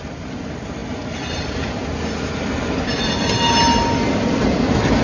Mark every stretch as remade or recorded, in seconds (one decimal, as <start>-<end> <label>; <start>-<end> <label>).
0.0-5.0 recorded

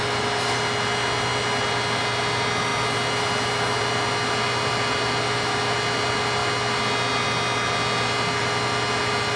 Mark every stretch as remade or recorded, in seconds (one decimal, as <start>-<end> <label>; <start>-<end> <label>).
0.0-9.4 recorded

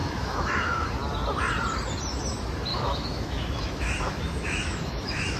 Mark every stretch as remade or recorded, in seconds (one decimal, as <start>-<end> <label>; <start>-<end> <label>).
0.0-0.9 remade; 0.9-2.7 recorded; 2.7-5.4 remade

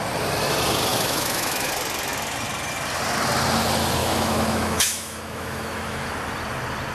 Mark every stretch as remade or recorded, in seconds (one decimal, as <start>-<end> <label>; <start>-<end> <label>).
0.0-0.9 recorded; 0.9-1.7 remade; 1.7-4.0 recorded; 4.0-6.1 remade; 6.1-6.9 recorded